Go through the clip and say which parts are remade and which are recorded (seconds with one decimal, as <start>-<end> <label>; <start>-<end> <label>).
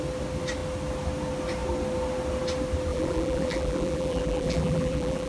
0.0-2.9 recorded; 2.9-5.3 remade